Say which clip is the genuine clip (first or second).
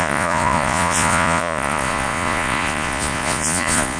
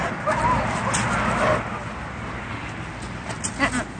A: second